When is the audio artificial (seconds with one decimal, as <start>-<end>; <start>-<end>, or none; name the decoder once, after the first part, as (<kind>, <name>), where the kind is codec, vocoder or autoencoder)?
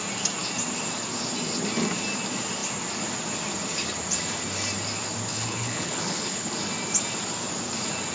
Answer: 5.3-6.5 (codec, HILCodec)